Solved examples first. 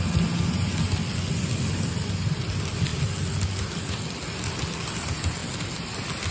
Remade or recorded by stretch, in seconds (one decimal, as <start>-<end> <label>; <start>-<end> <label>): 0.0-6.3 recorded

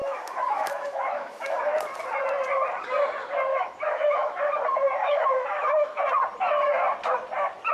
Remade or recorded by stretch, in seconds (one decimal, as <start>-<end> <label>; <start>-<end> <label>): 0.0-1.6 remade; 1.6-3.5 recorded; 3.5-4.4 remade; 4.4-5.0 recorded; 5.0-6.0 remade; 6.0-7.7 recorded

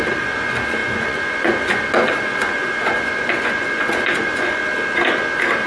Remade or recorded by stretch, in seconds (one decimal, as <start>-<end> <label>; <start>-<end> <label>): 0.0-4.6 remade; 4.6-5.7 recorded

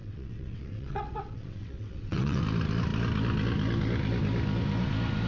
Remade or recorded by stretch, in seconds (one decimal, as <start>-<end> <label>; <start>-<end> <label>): 0.0-2.4 remade; 2.4-5.3 recorded

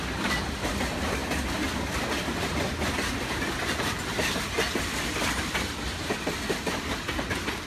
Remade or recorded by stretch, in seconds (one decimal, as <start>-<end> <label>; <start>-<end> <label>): 0.0-7.7 recorded

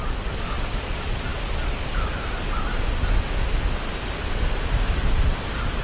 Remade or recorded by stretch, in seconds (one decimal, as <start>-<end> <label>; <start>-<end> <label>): 0.0-1.3 remade; 1.3-4.8 recorded; 4.8-5.8 remade